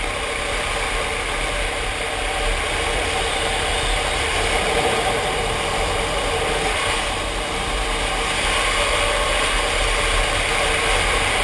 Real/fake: real